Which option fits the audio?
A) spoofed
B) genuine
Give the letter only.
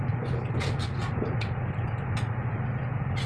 B